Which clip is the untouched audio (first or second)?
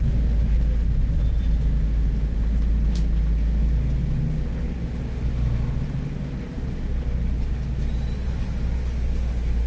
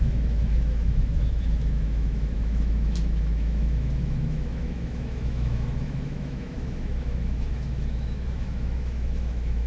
first